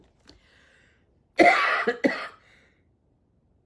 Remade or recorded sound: recorded